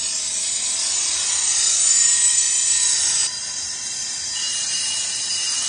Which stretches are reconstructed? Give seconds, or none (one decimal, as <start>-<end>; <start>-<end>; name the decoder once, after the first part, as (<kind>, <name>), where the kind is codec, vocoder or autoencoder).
none